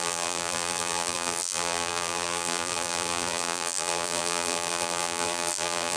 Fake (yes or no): yes